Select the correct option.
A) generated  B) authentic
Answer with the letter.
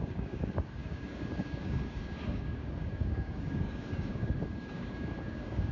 A